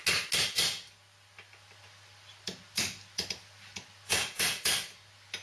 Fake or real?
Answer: real